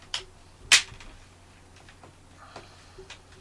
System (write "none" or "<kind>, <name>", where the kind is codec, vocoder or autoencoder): none